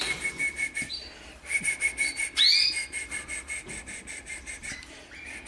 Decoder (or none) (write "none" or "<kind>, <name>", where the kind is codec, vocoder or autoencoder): none